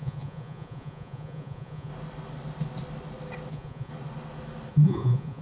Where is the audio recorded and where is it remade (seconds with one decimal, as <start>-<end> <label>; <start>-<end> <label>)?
0.0-1.9 remade; 1.9-3.5 recorded; 3.5-3.9 remade; 3.9-4.7 recorded; 4.7-5.4 remade